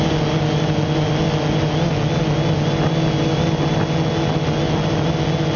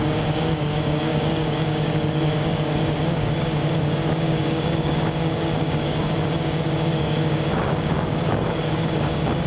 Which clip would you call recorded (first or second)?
first